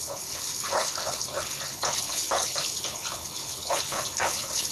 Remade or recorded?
remade